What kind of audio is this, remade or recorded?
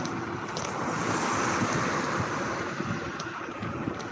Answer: recorded